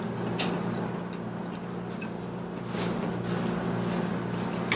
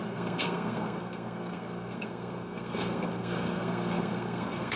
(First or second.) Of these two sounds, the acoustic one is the first